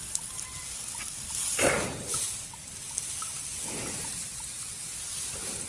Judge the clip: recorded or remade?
recorded